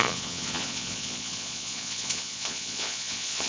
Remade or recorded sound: remade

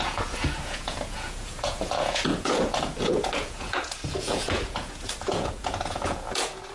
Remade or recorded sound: remade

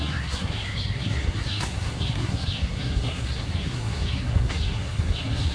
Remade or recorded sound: remade